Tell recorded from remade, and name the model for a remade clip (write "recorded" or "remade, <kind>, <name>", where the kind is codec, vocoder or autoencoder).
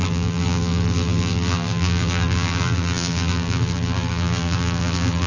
remade, vocoder, BigVGAN v2